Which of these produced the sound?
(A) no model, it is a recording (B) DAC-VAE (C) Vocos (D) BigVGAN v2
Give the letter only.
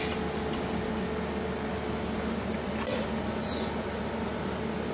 A